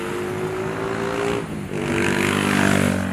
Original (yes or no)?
yes